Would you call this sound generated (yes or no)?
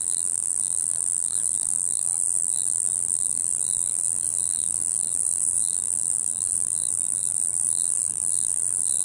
yes